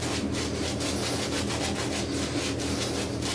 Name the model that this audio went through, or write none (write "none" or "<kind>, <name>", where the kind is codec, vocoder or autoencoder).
none